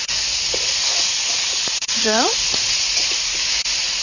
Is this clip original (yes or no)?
no